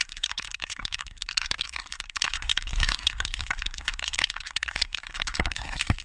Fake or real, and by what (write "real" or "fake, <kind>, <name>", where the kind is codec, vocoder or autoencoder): fake, codec, SNAC